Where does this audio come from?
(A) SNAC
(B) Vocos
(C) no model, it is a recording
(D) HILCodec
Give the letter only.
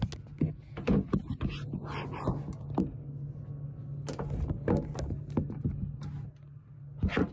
C